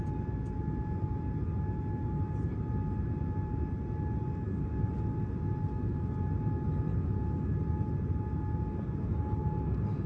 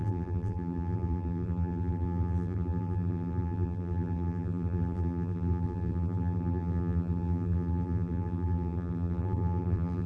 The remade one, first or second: second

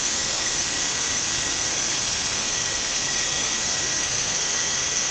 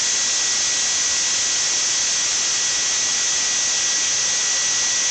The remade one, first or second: first